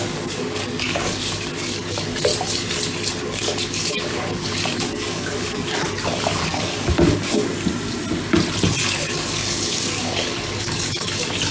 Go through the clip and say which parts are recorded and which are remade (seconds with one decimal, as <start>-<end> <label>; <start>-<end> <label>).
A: 0.0-2.3 remade; 2.3-3.2 recorded; 3.2-7.4 remade; 7.4-8.9 recorded; 8.9-11.5 remade